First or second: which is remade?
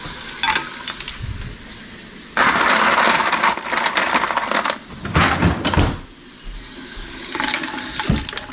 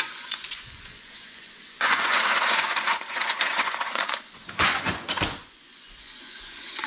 second